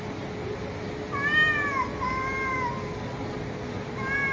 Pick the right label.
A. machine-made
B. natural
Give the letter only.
B